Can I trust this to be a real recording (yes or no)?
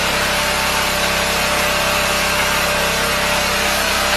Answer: yes